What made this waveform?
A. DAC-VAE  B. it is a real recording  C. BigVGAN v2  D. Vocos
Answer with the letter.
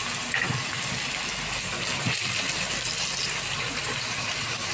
B